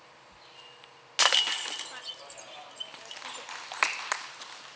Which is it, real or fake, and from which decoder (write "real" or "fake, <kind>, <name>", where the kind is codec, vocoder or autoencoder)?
real